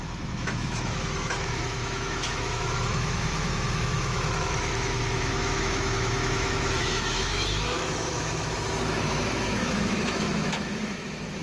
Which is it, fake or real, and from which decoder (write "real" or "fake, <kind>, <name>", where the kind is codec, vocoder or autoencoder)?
fake, autoencoder, DAC-VAE